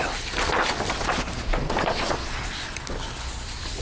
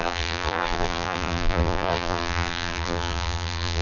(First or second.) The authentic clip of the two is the first